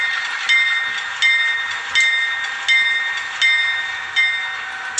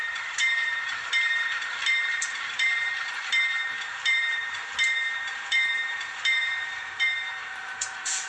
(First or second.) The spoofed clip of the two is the second